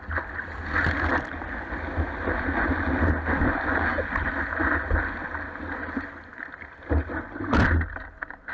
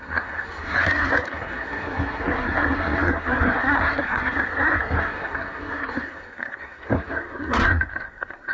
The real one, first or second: first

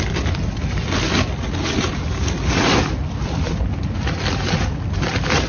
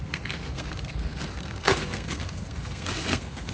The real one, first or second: first